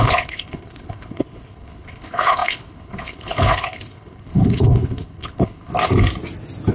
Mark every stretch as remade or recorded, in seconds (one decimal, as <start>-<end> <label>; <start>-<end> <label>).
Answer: 0.0-5.7 remade; 5.7-6.7 recorded